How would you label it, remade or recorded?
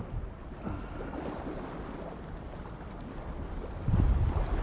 recorded